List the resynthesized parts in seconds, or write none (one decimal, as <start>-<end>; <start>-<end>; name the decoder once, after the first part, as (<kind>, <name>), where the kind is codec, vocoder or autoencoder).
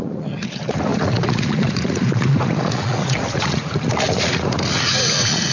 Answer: 0.0-5.5 (vocoder, Vocos)